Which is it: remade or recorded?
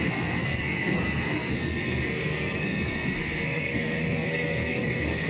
remade